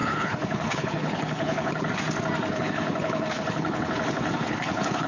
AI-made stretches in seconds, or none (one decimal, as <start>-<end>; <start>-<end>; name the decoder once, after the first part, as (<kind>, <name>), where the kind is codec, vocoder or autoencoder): 0.0-1.9 (codec, HILCodec); 2.5-5.1